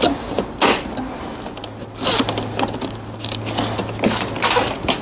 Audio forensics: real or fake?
real